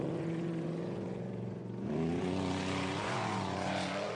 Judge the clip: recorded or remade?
remade